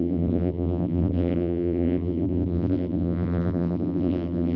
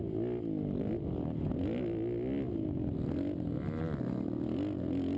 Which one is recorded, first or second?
second